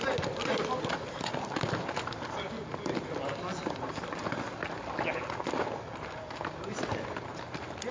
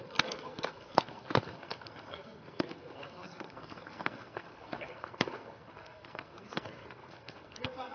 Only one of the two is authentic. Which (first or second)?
first